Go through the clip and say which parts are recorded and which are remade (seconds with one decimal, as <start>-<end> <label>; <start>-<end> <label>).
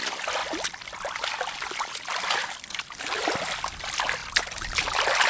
0.0-5.3 recorded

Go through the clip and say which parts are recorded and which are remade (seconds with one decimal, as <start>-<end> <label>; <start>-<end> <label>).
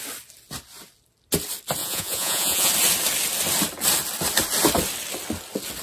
0.0-1.8 recorded; 1.8-2.7 remade; 2.7-5.8 recorded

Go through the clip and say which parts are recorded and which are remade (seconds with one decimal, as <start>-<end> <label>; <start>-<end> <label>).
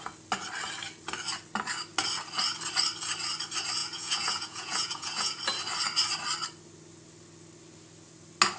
0.0-3.8 recorded; 3.8-5.4 remade; 5.4-8.6 recorded